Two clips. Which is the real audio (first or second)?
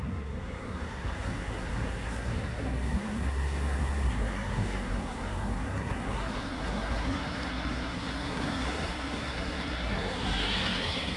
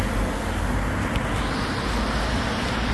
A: second